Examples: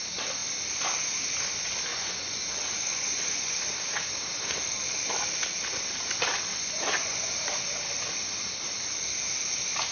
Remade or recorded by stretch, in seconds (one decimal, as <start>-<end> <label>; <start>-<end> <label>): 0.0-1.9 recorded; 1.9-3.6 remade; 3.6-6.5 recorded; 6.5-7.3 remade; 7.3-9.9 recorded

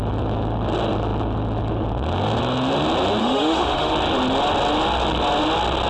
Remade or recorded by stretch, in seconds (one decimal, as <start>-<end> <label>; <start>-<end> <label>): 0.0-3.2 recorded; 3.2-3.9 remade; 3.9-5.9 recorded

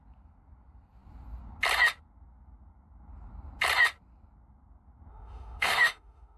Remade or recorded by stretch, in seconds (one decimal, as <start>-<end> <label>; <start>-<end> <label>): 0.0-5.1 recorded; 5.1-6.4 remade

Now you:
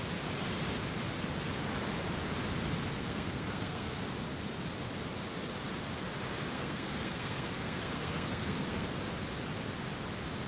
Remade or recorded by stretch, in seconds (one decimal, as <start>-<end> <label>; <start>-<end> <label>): 0.0-2.9 recorded; 2.9-4.0 remade; 4.0-6.5 recorded; 6.5-8.9 remade; 8.9-10.5 recorded

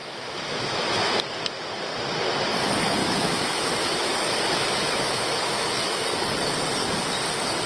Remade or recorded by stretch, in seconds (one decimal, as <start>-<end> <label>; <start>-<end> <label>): 0.0-1.1 remade; 1.1-3.0 recorded; 3.0-6.0 remade; 6.0-7.7 recorded